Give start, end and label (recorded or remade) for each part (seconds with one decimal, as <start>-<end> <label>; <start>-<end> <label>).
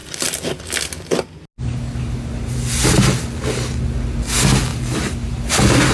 0.0-4.7 recorded; 4.7-5.5 remade; 5.5-5.9 recorded